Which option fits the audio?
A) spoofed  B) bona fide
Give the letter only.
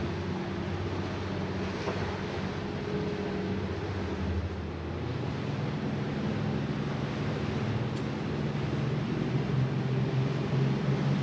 B